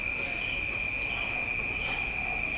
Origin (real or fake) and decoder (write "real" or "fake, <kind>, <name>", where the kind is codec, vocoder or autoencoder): real